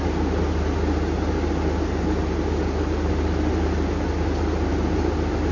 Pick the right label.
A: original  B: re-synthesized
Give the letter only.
A